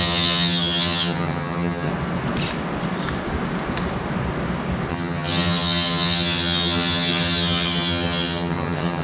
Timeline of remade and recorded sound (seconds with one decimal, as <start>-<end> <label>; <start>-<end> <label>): 0.0-1.9 remade; 1.9-4.9 recorded; 4.9-9.0 remade